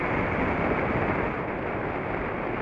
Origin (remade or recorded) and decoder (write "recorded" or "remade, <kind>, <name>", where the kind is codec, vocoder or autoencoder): recorded